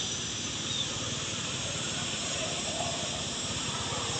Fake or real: real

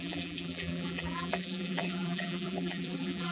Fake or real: fake